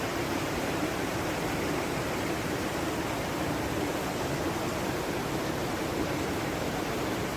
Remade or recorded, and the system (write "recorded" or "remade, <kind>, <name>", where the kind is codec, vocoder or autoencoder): remade, vocoder, BigVGAN v2